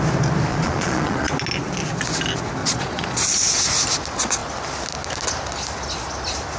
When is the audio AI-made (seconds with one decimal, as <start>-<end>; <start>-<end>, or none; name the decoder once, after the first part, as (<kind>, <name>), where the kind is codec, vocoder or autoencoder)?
0.5-1.3 (vocoder, Vocos); 2.6-3.2